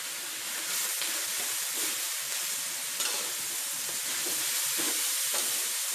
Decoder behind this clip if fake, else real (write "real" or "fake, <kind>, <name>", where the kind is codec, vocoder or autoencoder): real